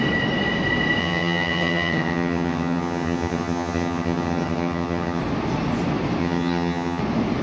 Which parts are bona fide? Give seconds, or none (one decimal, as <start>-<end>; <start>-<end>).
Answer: 0.0-1.0; 5.2-6.2; 7.0-7.4